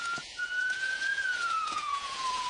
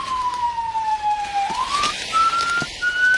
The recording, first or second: second